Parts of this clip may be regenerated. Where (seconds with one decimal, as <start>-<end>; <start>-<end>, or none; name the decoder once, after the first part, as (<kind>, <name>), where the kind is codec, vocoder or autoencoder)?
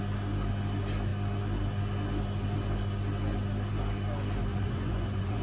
4.5-5.4 (vocoder, Vocos)